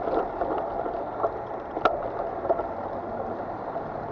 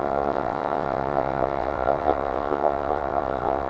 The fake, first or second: second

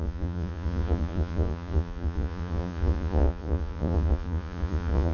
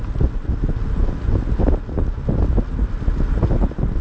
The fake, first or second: first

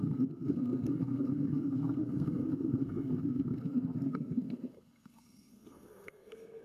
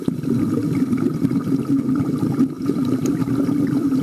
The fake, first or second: first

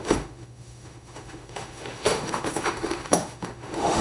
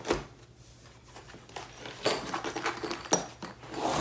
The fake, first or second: first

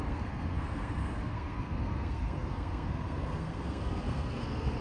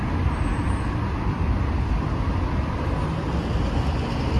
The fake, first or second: first